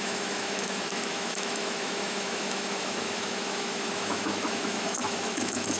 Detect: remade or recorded remade